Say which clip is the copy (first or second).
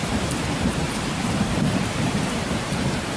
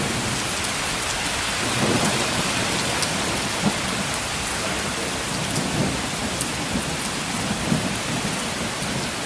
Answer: first